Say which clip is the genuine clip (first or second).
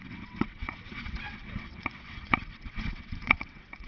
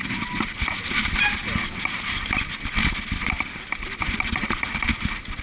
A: second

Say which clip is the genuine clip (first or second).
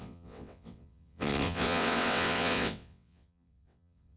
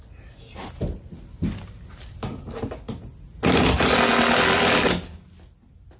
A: second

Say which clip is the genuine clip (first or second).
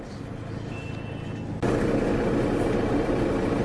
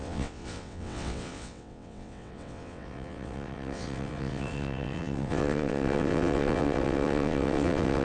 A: first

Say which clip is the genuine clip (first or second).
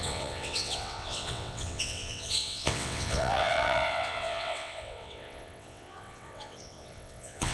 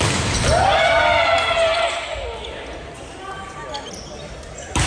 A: second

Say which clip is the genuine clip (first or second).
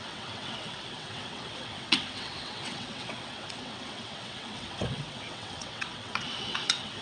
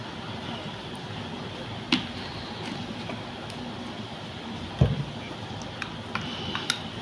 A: second